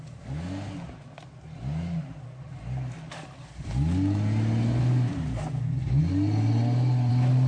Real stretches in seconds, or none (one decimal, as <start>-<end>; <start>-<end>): 0.0-7.5